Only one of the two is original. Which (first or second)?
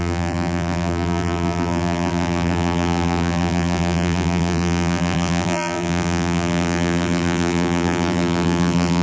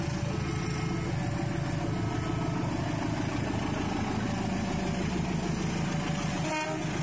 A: second